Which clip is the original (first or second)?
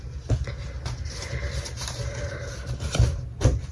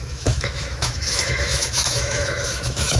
first